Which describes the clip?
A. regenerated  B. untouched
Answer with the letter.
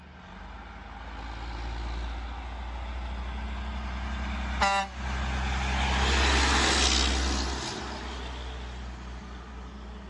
B